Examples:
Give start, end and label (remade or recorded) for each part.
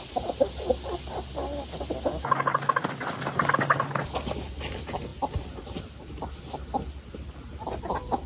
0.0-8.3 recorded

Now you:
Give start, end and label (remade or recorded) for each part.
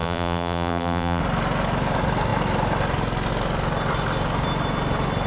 0.0-1.2 remade; 1.2-5.3 recorded